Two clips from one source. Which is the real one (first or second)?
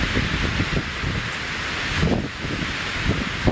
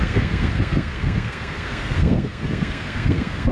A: first